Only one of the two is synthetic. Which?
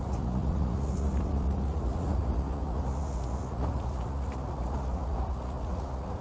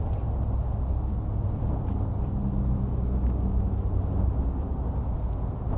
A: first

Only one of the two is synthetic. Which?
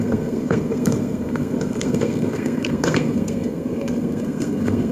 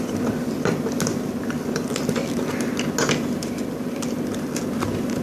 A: first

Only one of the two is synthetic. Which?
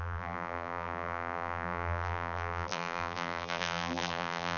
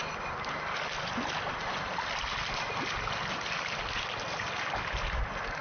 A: first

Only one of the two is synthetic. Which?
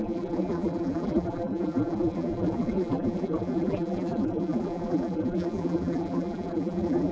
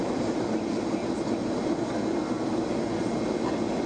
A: first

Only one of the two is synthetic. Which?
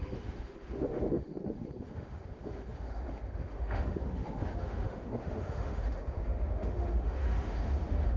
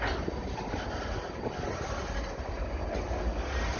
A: first